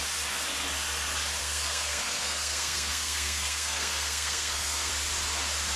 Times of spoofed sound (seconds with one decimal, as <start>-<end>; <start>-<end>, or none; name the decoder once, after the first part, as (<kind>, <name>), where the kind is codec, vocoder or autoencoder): 1.4-4.9 (codec, SNAC)